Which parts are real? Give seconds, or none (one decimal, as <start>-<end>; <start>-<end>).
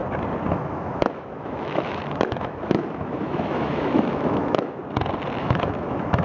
0.0-0.5; 4.8-5.4